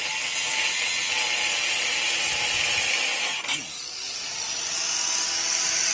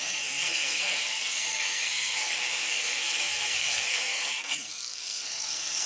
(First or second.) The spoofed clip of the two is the second